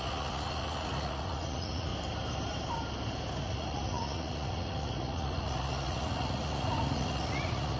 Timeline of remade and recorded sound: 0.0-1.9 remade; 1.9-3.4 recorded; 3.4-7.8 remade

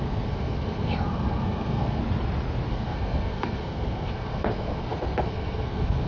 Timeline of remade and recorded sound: 0.0-2.0 remade; 2.0-2.7 recorded; 2.7-6.1 remade

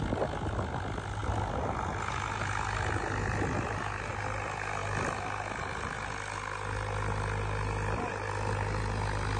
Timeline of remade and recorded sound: 0.0-9.4 recorded

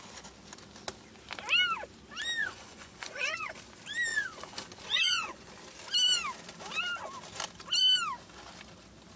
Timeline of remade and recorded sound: 0.0-2.4 recorded; 2.4-3.6 remade; 3.6-4.1 recorded; 4.1-5.5 remade; 5.5-9.2 recorded

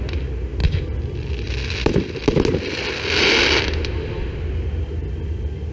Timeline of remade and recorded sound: 0.0-5.7 recorded

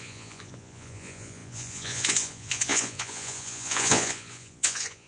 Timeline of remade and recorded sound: 0.0-5.1 remade